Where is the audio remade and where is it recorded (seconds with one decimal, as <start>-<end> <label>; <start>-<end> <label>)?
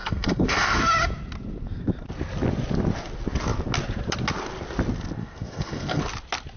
0.0-0.8 remade; 0.8-5.2 recorded; 5.2-6.0 remade; 6.0-6.6 recorded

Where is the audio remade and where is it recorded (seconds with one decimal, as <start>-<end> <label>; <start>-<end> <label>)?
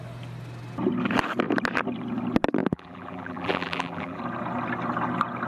0.0-2.6 recorded; 2.6-4.2 remade; 4.2-5.5 recorded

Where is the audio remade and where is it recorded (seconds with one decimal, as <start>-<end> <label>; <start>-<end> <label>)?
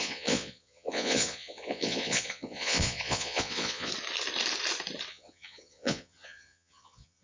0.0-3.9 remade; 3.9-5.1 recorded; 5.1-7.2 remade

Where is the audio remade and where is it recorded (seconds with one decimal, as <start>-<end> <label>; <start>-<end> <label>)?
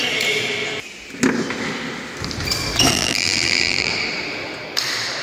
0.0-2.9 recorded; 2.9-3.9 remade; 3.9-5.2 recorded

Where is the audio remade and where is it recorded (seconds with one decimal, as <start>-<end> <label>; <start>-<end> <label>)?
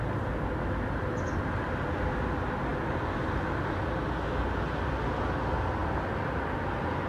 0.0-7.1 recorded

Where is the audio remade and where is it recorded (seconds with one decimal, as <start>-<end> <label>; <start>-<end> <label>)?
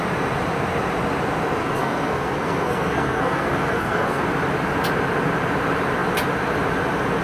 0.0-1.6 recorded; 1.6-4.2 remade; 4.2-7.2 recorded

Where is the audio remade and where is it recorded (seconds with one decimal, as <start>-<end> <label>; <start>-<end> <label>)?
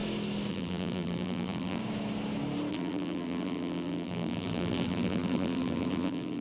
0.0-0.5 recorded; 0.5-1.8 remade; 1.8-2.7 recorded; 2.7-6.4 remade